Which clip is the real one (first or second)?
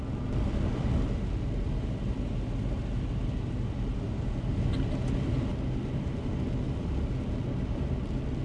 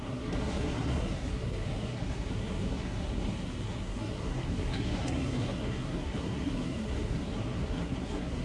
first